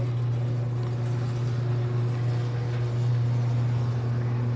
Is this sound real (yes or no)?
yes